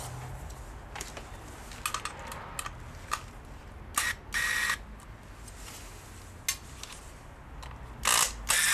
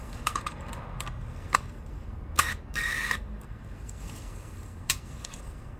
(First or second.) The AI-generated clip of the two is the second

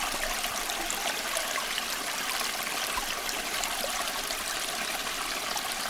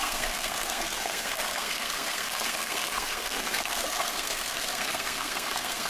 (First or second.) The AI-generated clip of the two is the second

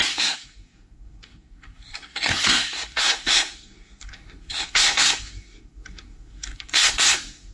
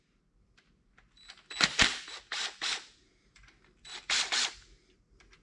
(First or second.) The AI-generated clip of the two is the first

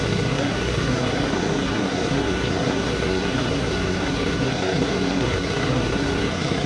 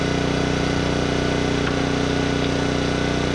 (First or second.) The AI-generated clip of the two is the first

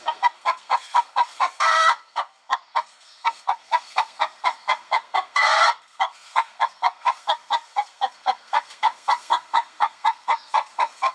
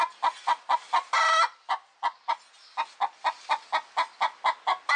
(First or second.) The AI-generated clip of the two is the first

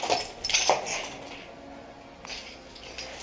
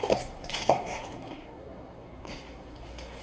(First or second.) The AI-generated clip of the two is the second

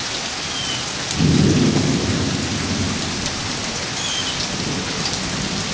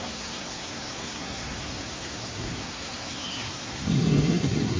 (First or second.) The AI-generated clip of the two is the second